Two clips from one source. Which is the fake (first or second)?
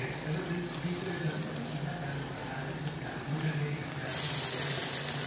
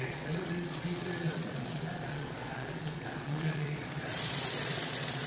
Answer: second